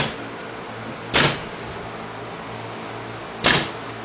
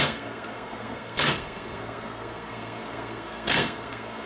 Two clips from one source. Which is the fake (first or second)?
second